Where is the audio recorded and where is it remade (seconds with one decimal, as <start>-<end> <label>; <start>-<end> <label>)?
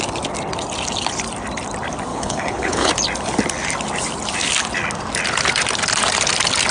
0.0-2.1 recorded; 2.1-2.9 remade; 2.9-6.7 recorded